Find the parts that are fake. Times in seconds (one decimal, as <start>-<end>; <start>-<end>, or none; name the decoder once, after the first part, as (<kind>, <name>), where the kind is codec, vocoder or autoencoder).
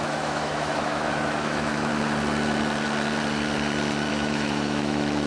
0.0-1.9 (autoencoder, DAC-VAE); 4.1-5.3